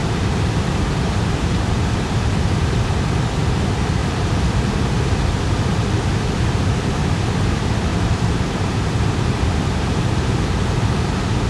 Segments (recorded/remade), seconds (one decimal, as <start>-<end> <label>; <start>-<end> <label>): 0.0-3.0 remade; 3.0-4.0 recorded; 4.0-4.7 remade; 4.7-7.9 recorded; 7.9-10.0 remade; 10.0-11.5 recorded